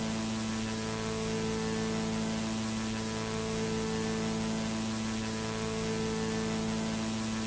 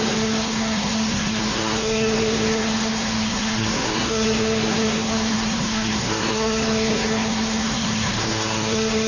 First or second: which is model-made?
second